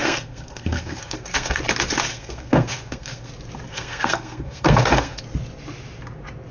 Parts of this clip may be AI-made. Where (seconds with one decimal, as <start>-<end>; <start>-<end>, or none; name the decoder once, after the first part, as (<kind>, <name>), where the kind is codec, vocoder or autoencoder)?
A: 0.0-1.6 (codec, SNAC); 2.1-3.3; 3.7-5.2